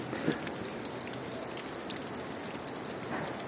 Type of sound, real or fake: real